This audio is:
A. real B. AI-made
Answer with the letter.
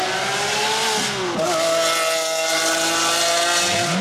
A